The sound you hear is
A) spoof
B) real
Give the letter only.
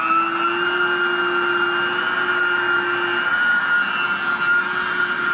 B